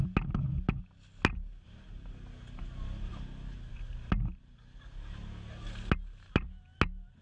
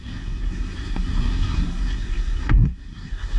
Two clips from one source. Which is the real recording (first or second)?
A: first